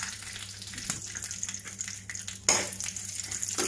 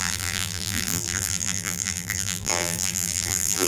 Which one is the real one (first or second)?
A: first